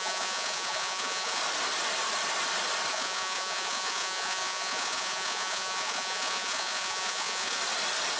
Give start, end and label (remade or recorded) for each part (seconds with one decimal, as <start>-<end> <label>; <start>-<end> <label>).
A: 0.0-1.4 remade; 1.4-2.9 recorded; 2.9-7.6 remade; 7.6-8.2 recorded